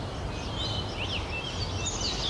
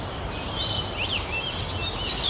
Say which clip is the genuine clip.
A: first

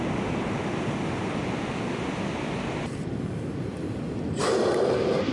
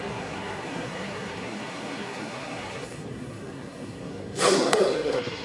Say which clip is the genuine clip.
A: first